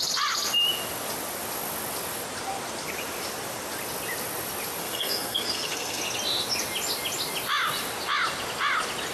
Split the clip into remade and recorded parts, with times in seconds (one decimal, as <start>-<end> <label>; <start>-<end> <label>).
0.0-4.8 recorded; 4.8-6.0 remade; 6.0-9.1 recorded